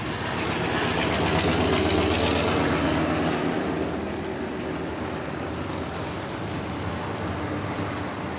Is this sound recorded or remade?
recorded